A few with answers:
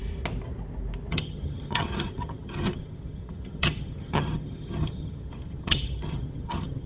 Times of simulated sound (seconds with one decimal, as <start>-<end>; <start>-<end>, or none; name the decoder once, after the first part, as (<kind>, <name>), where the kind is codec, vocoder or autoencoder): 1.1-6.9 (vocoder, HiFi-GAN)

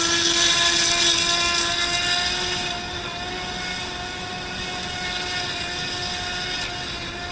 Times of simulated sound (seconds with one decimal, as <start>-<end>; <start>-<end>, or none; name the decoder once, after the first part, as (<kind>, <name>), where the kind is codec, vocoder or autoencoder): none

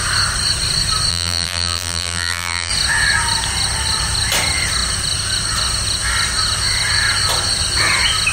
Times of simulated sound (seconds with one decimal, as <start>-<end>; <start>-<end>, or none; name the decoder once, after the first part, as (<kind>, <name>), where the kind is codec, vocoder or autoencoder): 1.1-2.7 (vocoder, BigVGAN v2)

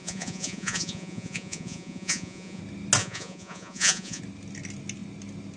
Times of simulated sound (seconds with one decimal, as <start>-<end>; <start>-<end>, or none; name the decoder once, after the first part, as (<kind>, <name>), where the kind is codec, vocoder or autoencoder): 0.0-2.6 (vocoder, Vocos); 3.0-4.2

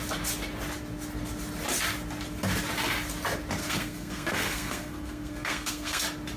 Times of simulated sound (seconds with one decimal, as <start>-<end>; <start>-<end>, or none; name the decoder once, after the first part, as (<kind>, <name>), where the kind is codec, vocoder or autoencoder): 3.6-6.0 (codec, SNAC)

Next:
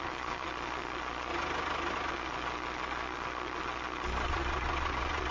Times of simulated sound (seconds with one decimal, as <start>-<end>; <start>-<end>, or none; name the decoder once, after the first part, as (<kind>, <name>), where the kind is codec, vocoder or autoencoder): 0.0-1.3 (vocoder, Vocos); 2.1-5.3

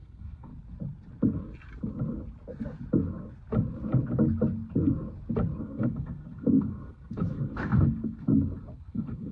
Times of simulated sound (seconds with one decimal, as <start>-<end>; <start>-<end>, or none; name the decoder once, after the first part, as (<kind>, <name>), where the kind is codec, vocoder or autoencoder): 0.0-0.5 (codec, SNAC); 5.6-8.3; 8.9-9.3

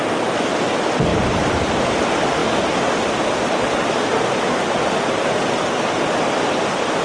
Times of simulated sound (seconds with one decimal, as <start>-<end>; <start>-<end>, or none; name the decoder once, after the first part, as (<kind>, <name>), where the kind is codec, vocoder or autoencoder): 1.1-1.9 (vocoder, BigVGAN v2)